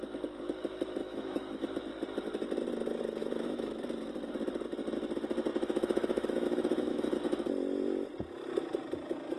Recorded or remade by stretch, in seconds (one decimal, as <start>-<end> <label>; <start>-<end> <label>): 0.0-1.0 recorded; 1.0-1.6 remade; 1.6-3.2 recorded; 3.2-3.8 remade; 3.8-5.5 recorded; 5.5-7.1 remade; 7.1-9.4 recorded